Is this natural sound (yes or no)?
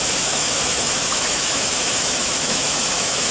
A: no